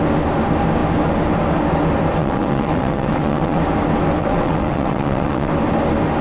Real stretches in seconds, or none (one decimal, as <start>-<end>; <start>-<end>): 0.0-2.2; 3.6-4.2; 5.5-6.2